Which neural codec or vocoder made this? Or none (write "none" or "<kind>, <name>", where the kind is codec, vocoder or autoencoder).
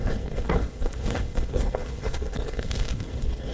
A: codec, SNAC